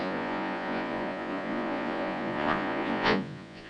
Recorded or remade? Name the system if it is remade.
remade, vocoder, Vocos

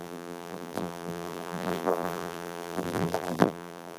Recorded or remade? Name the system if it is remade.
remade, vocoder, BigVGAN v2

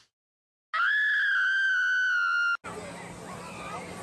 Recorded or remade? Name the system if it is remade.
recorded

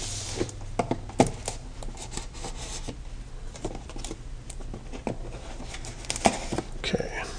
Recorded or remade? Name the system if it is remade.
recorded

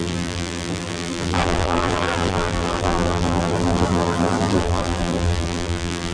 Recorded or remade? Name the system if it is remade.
remade, vocoder, BigVGAN v2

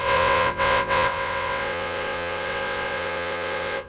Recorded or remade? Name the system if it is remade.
remade, vocoder, WaveNeXt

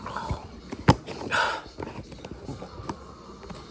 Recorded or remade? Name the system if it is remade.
recorded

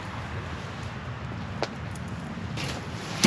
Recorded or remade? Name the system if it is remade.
recorded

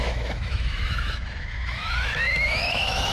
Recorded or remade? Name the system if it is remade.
remade, autoencoder, DAC-VAE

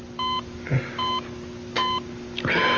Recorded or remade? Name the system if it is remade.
recorded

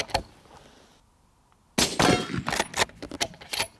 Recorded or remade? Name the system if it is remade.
recorded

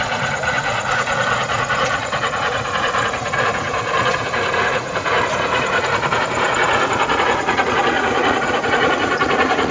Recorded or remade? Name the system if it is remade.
remade, vocoder, Vocos